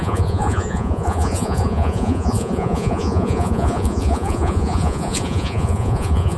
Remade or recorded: remade